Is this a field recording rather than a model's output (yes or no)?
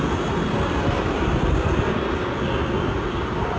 yes